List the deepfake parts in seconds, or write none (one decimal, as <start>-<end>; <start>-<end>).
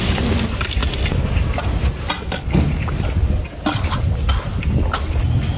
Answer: none